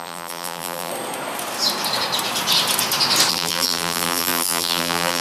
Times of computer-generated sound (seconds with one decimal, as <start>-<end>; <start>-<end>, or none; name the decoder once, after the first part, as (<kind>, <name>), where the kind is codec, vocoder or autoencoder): 0.0-0.9 (vocoder, BigVGAN v2); 3.3-5.2